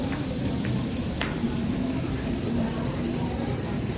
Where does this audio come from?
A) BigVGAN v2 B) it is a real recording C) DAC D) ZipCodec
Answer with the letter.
A